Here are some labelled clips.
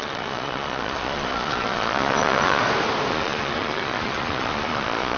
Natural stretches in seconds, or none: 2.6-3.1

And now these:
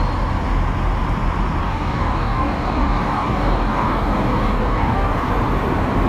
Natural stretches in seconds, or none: 0.0-1.6; 5.3-6.1

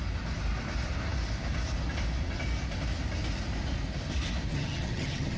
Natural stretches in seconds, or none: 0.0-4.5

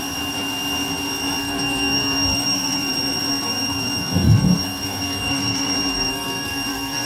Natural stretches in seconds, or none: 0.0-1.4; 2.9-3.3

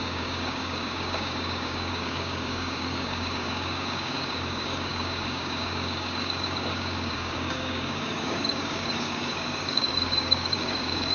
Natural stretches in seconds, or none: none

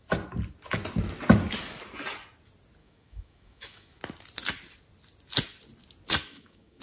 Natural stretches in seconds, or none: 0.0-2.8; 4.0-6.2

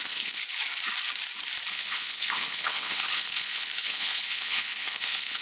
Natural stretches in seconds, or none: 0.4-1.7